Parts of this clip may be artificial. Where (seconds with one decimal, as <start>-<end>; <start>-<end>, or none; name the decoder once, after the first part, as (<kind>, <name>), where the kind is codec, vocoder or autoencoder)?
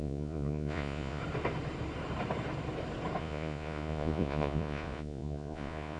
0.0-1.2 (vocoder, Vocos); 3.2-6.0